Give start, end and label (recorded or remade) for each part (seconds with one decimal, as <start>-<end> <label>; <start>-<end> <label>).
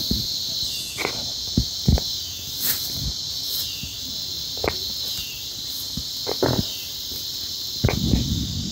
0.0-1.3 remade; 1.3-2.4 recorded; 2.4-3.9 remade; 3.9-5.1 recorded; 5.1-8.7 remade